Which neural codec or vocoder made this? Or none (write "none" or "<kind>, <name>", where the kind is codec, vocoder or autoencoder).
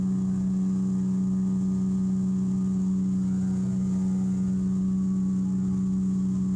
none